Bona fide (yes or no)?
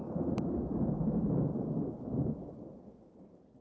yes